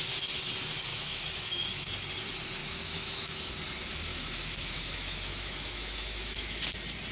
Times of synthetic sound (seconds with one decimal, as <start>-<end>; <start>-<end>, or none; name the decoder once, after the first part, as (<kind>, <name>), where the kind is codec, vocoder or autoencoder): 0.9-1.9 (autoencoder, DAC-VAE); 2.6-3.5; 4.1-6.6